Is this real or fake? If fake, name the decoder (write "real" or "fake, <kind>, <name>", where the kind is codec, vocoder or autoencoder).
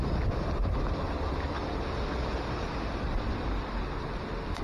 real